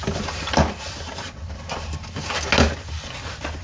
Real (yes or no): yes